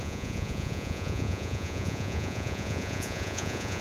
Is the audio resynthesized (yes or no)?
yes